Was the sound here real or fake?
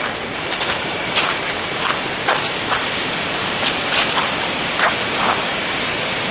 real